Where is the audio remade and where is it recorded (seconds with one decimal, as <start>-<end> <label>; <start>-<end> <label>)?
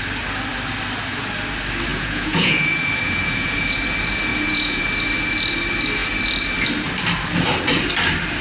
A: 0.0-1.9 recorded; 1.9-3.8 remade; 3.8-4.3 recorded; 4.3-4.8 remade; 4.8-8.4 recorded